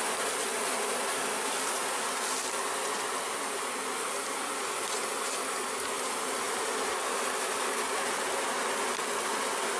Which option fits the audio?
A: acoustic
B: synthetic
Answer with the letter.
A